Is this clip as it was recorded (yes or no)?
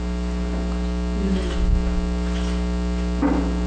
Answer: yes